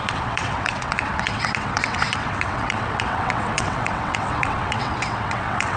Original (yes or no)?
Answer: no